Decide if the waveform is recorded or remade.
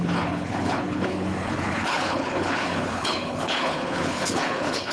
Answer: remade